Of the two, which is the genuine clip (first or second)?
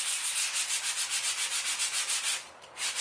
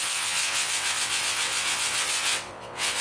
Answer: first